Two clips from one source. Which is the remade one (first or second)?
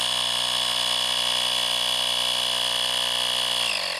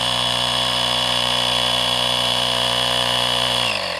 second